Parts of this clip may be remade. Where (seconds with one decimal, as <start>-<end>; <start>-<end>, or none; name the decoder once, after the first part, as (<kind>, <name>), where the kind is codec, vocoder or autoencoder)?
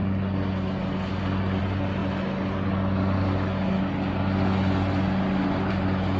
none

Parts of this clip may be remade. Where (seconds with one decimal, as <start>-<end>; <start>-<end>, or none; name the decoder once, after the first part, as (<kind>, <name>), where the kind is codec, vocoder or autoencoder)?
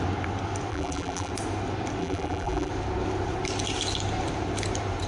0.7-1.3 (vocoder, BigVGAN v2); 2.0-2.7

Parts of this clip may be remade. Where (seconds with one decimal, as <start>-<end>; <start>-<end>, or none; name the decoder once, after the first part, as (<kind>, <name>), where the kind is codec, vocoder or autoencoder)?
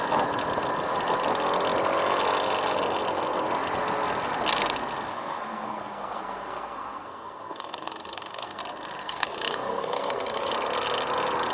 5.1-8.6 (codec, SNAC); 9.0-10.5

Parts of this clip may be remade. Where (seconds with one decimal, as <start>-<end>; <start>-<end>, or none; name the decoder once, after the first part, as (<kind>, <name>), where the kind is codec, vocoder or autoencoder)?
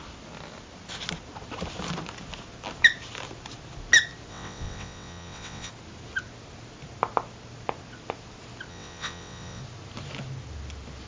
4.3-5.7 (vocoder, WaveNeXt); 8.7-9.6